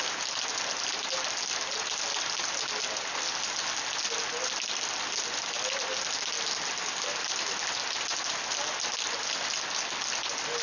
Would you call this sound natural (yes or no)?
yes